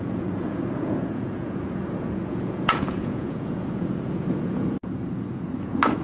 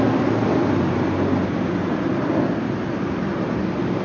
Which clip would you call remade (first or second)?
first